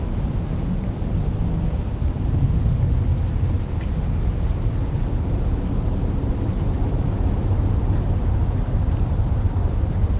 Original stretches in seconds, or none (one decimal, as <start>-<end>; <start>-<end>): 0.0-10.2

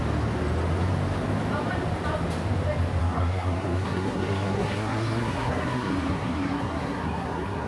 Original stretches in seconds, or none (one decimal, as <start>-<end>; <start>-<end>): 0.0-3.0

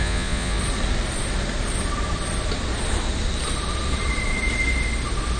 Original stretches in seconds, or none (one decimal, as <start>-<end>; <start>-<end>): 0.6-5.4

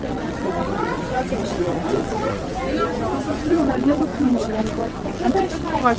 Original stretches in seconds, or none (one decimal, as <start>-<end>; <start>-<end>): 2.5-3.3